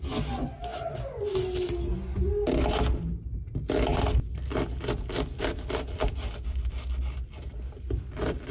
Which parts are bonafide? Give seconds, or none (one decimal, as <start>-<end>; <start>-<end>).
0.0-8.5